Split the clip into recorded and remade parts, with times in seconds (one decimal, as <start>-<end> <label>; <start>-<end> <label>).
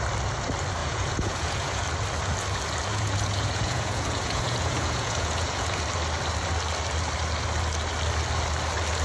0.0-0.8 recorded; 0.8-1.8 remade; 1.8-2.9 recorded; 2.9-5.8 remade; 5.8-9.0 recorded